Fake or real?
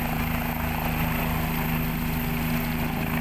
real